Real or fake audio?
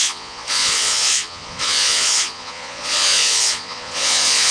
fake